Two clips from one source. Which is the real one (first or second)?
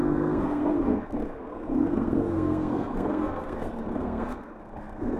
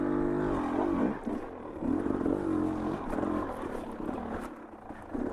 second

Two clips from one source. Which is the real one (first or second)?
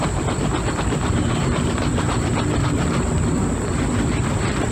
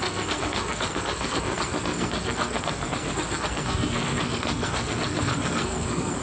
first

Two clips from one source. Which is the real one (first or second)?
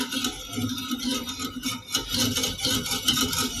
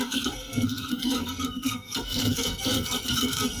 first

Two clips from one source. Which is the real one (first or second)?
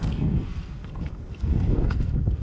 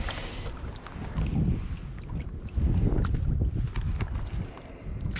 second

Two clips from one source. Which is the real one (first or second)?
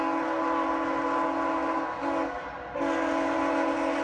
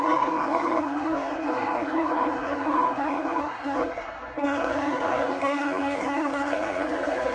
first